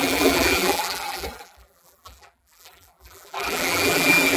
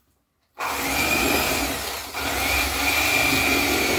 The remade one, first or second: first